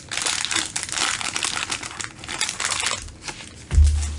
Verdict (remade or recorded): recorded